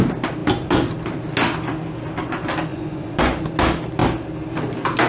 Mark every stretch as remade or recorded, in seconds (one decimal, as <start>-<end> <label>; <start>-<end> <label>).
0.0-2.7 recorded; 2.7-3.4 remade; 3.4-5.1 recorded